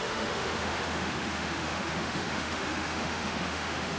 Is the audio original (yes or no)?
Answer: no